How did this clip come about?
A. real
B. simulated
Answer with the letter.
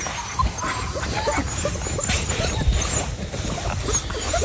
A